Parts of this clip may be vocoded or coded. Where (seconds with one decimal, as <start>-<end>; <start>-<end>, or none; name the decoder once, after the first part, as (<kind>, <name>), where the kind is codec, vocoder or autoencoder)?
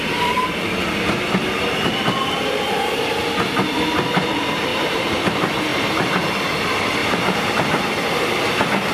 4.7-5.2 (vocoder, BigVGAN v2); 5.7-6.2; 7.0-8.1